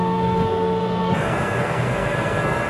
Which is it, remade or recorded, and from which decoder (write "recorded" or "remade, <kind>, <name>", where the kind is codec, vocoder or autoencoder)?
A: remade, codec, SNAC